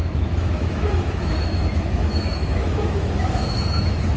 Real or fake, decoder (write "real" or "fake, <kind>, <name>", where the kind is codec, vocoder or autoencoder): fake, autoencoder, DAC-VAE